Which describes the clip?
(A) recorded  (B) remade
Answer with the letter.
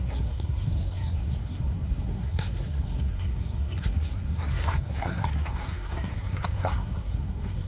B